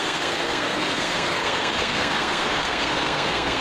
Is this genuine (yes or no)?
no